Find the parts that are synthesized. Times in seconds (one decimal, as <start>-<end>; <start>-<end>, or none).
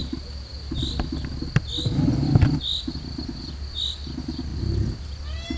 none